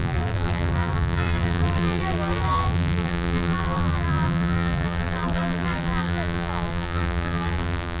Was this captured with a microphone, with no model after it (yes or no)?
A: no